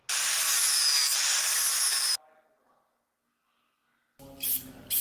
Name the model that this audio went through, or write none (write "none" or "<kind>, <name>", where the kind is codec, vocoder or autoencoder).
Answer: none